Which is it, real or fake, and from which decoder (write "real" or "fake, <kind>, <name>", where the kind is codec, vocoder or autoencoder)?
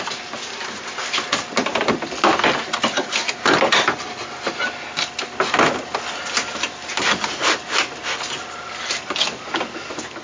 real